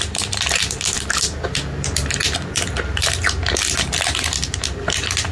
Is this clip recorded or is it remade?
recorded